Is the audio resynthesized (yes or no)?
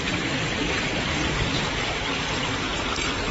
no